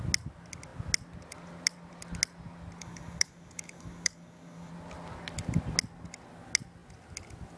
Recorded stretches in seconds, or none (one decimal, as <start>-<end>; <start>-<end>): 0.0-2.8; 4.7-7.6